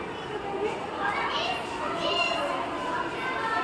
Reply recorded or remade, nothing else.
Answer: recorded